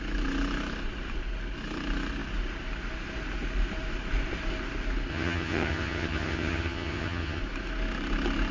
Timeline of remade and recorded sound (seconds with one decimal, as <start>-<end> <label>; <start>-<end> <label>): 0.0-5.1 recorded; 5.1-7.4 remade; 7.4-8.5 recorded